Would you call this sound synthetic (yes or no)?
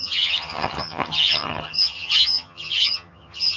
yes